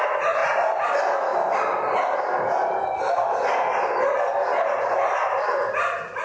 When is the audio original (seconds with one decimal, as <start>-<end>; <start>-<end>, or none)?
0.0-6.2